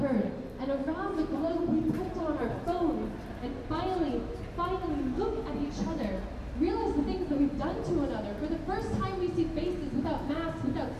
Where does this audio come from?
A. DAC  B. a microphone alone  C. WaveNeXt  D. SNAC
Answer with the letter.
B